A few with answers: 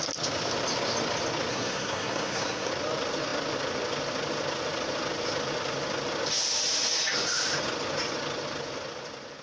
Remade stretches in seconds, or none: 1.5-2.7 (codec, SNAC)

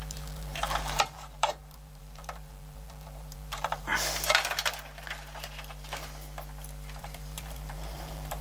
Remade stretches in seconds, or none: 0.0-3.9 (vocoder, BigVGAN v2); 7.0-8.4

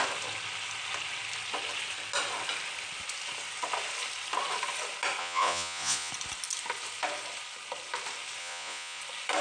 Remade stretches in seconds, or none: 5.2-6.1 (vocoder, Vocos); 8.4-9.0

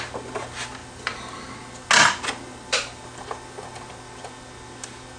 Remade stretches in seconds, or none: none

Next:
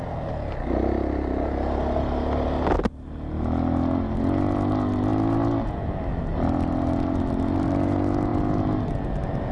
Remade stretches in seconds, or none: none

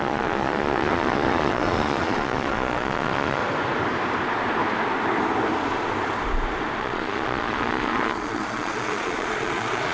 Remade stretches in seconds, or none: 0.0-3.4 (vocoder, Vocos); 6.8-9.9